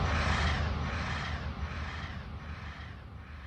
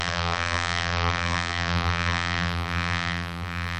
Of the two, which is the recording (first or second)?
first